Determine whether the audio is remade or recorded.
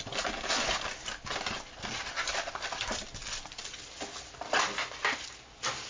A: recorded